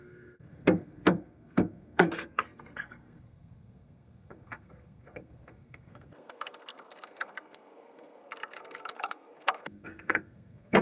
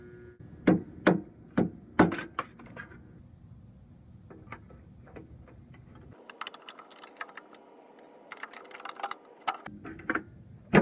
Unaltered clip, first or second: second